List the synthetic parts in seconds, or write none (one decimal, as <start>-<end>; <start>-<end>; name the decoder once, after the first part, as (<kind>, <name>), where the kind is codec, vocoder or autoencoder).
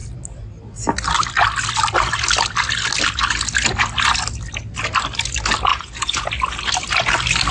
5.7-6.3 (vocoder, Vocos)